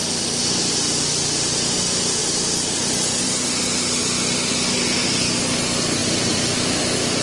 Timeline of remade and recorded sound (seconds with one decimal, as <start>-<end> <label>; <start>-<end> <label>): 0.0-6.0 recorded; 6.0-6.8 remade; 6.8-7.2 recorded